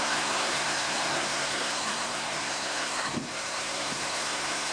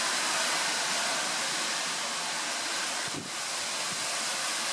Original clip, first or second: second